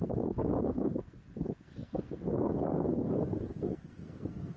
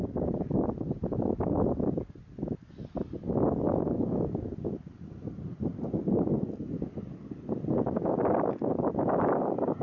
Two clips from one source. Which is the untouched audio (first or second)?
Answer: second